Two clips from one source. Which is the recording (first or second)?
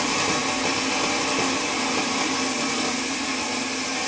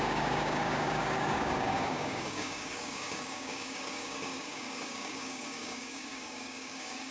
first